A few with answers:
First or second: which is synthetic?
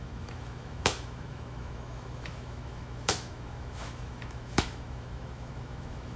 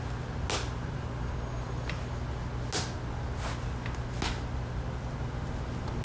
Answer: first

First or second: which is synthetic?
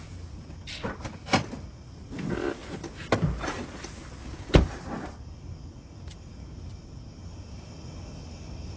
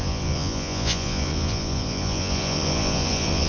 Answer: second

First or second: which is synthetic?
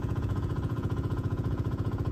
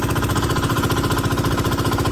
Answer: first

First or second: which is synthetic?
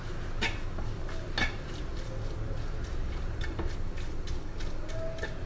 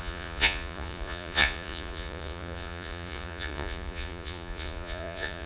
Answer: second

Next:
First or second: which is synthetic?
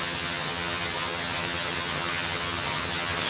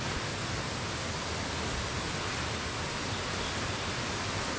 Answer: first